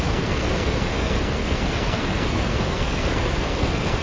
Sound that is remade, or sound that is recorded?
remade